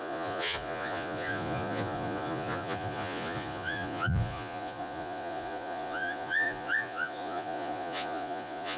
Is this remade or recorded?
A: remade